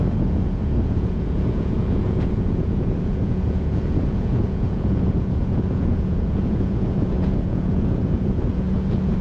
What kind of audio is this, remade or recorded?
remade